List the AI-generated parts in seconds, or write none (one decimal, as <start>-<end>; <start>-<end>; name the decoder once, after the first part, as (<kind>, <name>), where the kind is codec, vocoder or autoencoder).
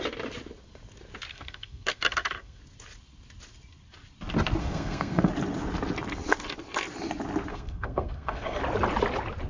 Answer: 1.3-2.6 (codec, SNAC); 4.6-5.3; 7.5-8.6